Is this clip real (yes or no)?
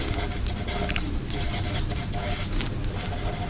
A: yes